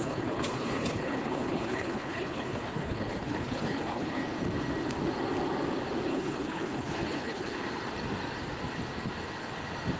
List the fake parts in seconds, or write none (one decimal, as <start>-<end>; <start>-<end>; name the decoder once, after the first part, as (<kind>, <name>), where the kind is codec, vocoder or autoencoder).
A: 0.0-4.2 (codec, HILCodec); 6.1-7.5